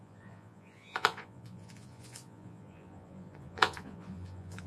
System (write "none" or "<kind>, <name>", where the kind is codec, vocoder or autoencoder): vocoder, Vocos